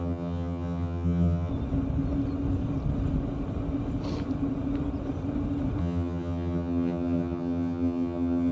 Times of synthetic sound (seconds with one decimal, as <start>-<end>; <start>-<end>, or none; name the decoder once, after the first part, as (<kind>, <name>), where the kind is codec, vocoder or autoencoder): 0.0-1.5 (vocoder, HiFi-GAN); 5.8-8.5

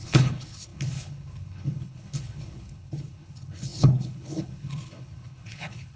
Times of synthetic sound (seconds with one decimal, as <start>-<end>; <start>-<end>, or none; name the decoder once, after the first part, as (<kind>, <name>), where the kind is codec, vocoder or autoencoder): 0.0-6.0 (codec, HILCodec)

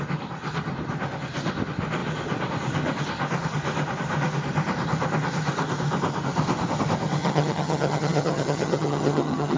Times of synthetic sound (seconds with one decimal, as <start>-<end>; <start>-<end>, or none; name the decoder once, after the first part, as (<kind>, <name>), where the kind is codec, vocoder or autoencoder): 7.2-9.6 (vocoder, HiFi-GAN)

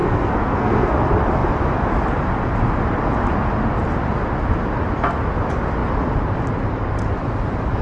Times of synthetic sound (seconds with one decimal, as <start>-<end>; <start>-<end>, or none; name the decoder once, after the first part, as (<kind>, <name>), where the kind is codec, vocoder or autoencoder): 0.0-0.9 (codec, SNAC)

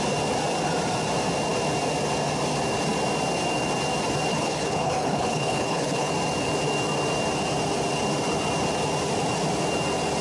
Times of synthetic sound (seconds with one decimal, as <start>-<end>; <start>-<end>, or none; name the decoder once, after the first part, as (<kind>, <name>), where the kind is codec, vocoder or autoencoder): 4.3-6.1 (codec, HILCodec)

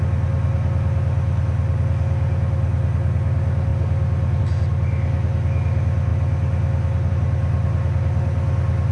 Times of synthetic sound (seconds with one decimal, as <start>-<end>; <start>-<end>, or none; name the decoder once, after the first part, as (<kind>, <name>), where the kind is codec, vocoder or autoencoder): none